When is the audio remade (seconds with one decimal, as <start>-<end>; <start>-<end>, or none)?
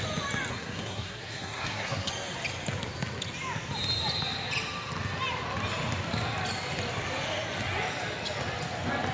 0.5-2.1